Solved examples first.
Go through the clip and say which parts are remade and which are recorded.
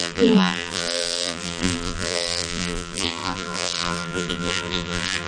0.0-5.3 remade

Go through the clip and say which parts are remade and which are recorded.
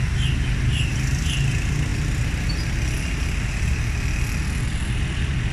0.0-5.5 recorded